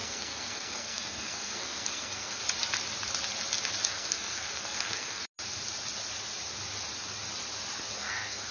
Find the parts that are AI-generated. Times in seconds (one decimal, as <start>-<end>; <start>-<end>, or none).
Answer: 0.0-2.4; 3.9-5.2; 7.9-8.5